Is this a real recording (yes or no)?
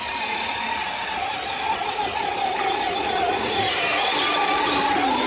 yes